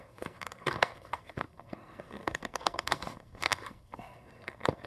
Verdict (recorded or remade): remade